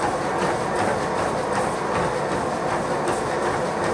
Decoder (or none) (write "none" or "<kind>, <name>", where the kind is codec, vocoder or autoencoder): none